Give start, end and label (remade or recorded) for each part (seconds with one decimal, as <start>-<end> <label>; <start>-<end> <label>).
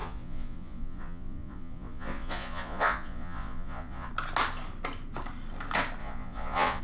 0.0-4.1 remade; 4.1-6.0 recorded; 6.0-6.8 remade